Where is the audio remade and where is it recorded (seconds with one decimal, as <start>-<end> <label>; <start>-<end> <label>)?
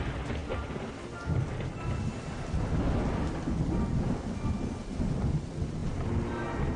0.0-6.8 recorded